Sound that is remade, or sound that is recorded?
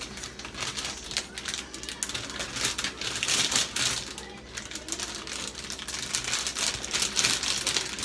recorded